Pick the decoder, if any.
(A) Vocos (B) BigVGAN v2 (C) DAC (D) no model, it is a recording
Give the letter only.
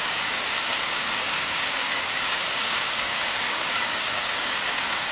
C